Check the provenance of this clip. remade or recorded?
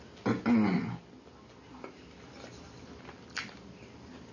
recorded